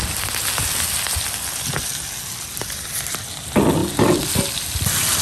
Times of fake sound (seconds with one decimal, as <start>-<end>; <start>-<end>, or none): none